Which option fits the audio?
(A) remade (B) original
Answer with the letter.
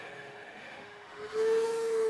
A